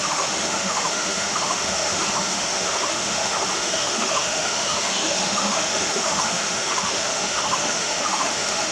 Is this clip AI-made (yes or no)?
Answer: yes